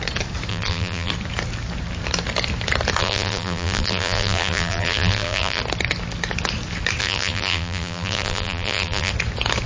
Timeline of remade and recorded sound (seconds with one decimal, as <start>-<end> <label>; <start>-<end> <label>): 0.0-0.5 recorded; 0.5-1.1 remade; 1.1-3.0 recorded; 3.0-5.6 remade; 5.6-7.0 recorded; 7.0-9.1 remade; 9.1-9.7 recorded